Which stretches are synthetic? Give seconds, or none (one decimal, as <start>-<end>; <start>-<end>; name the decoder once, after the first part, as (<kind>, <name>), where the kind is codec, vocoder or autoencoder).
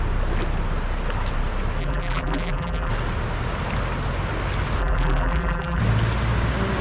1.8-2.9 (vocoder, BigVGAN v2); 4.8-5.8